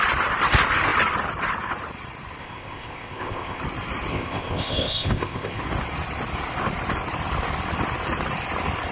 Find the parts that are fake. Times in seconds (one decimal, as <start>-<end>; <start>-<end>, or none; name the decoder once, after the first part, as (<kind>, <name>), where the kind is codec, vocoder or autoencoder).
2.4-3.6 (codec, ZipCodec); 4.1-5.6